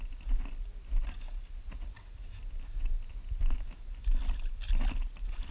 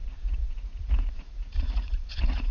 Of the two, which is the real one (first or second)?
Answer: first